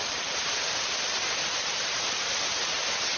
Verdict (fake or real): real